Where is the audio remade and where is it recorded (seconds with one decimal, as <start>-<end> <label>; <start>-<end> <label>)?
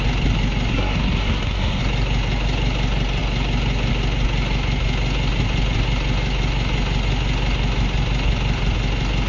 0.0-0.7 recorded; 0.7-1.8 remade; 1.8-9.3 recorded